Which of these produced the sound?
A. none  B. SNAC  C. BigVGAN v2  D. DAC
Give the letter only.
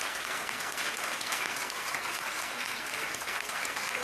B